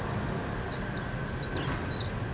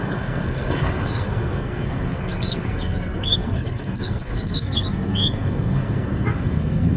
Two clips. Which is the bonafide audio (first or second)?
first